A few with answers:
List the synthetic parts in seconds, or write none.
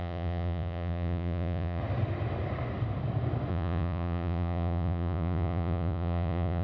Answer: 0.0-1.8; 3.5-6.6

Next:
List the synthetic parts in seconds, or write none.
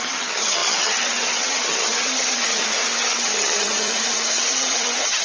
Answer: 0.0-5.2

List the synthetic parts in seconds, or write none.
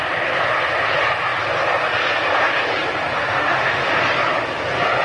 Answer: 3.2-3.9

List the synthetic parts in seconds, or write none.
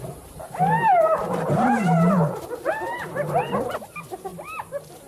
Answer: 1.2-3.7; 4.3-5.1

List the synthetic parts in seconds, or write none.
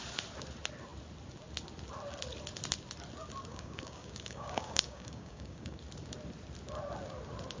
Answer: 3.5-5.8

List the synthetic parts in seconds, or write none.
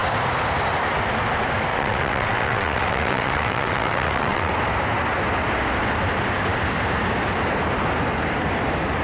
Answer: 1.7-4.5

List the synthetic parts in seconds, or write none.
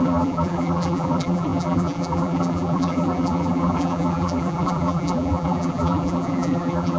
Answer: 0.0-7.0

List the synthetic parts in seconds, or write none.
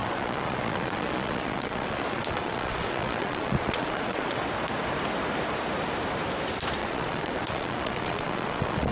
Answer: 0.0-4.4; 6.8-8.9